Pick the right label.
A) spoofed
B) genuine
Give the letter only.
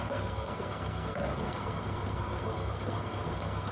A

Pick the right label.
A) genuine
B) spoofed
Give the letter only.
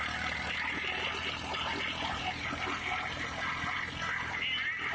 A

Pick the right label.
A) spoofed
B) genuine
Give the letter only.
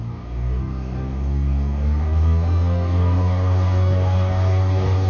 A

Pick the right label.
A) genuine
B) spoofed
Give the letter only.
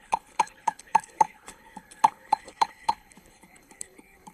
B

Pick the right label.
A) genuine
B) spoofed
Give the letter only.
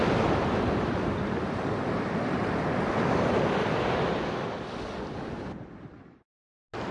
A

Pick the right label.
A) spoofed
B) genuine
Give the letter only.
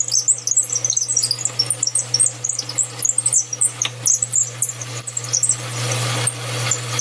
B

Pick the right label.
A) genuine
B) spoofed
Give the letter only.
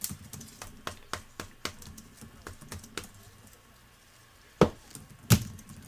A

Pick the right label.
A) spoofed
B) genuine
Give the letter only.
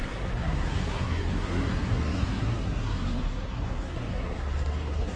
A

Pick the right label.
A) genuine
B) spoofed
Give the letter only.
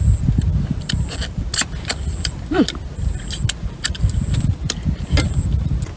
A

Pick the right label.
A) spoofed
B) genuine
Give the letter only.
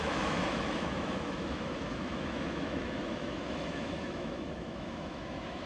A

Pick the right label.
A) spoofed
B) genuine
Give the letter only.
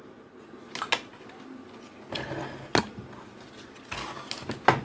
B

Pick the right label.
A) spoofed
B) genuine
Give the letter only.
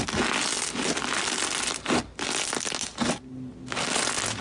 B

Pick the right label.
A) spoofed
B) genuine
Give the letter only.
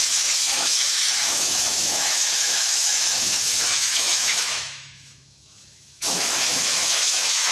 A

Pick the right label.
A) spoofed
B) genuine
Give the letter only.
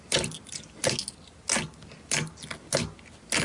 B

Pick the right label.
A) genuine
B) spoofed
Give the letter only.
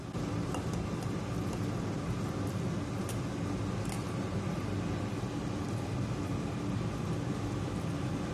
A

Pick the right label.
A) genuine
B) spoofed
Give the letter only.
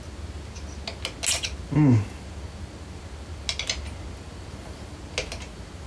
A